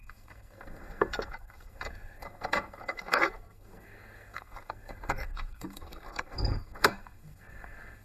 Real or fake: fake